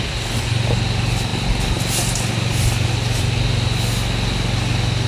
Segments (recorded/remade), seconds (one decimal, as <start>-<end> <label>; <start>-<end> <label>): 0.0-5.1 recorded